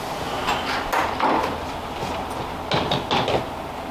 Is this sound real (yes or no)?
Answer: yes